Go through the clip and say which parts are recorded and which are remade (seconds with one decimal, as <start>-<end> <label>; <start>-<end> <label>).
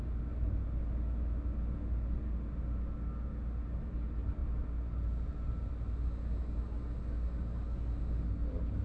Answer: 0.0-8.8 recorded